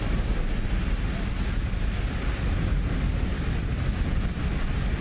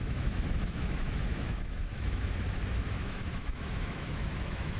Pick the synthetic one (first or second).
second